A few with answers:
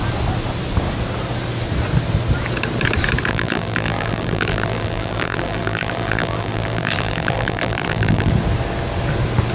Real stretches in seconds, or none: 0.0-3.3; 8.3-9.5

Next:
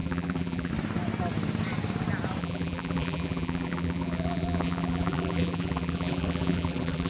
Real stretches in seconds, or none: 0.7-2.4

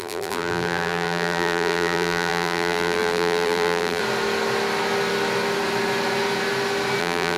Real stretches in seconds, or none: 4.0-7.0